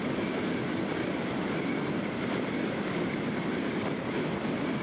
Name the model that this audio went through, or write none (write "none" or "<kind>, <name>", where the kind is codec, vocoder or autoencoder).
none